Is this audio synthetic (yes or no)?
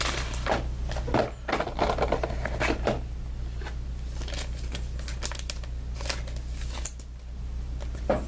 no